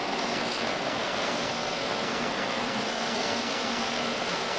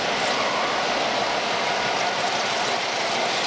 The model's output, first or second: first